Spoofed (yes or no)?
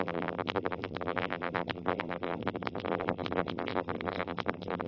yes